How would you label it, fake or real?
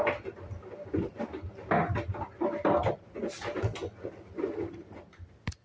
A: real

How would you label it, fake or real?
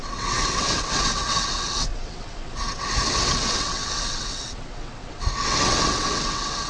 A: fake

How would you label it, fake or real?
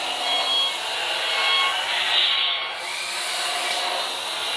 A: real